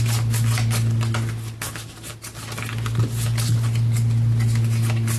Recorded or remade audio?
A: recorded